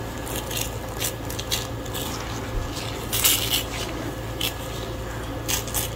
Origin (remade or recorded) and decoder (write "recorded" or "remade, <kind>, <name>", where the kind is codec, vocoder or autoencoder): recorded